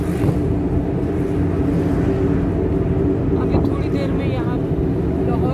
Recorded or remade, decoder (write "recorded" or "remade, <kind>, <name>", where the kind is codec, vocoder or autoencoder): recorded